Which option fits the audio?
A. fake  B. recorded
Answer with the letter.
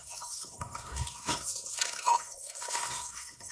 A